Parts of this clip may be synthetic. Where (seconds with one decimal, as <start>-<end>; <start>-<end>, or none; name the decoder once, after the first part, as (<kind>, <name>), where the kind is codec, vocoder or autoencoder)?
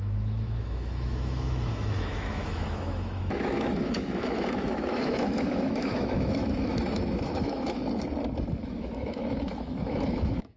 0.0-7.8 (autoencoder, DAC-VAE); 8.5-10.6